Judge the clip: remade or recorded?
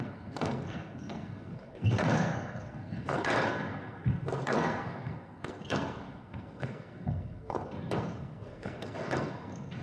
remade